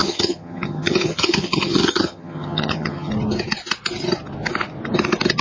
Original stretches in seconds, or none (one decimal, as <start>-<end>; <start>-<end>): 3.1-5.4